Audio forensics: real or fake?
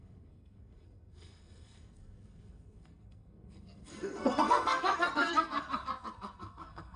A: fake